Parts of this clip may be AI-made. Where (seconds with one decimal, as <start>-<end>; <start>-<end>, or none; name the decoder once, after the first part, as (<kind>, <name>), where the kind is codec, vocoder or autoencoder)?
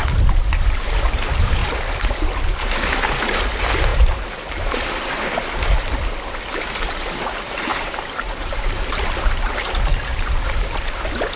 3.9-4.9 (vocoder, BigVGAN v2); 7.7-9.4; 10.1-10.8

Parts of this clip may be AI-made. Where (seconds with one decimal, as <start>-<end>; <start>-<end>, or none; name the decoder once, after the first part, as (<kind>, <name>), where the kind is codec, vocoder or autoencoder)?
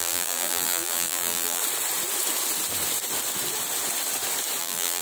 0.0-1.6 (vocoder, BigVGAN v2); 4.6-5.0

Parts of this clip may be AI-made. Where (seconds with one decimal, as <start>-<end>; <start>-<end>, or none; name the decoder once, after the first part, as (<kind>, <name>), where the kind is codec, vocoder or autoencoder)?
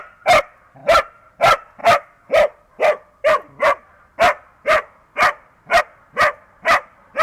0.8-1.3 (vocoder, BigVGAN v2)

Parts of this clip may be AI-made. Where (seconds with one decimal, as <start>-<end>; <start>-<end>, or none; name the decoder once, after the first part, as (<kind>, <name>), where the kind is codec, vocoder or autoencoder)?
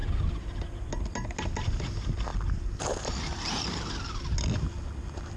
none